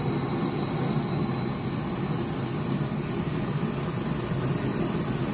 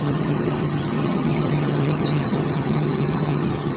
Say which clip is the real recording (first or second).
first